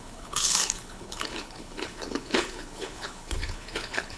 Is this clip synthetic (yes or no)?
yes